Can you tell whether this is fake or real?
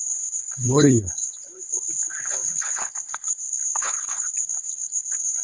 fake